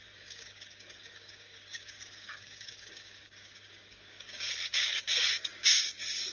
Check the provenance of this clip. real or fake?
fake